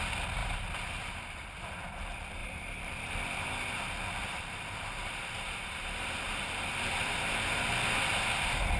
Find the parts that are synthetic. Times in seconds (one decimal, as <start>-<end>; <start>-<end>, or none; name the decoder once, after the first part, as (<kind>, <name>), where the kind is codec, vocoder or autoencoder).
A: 0.4-1.9 (vocoder, BigVGAN v2); 2.4-3.1; 4.2-7.2